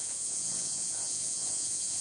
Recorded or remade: remade